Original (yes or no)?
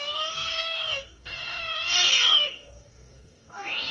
no